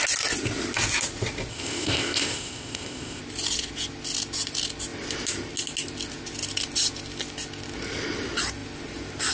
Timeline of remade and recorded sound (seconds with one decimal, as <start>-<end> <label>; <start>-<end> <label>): 0.0-1.5 recorded; 1.5-3.2 remade; 3.2-9.3 recorded